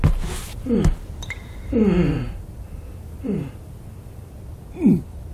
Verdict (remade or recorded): recorded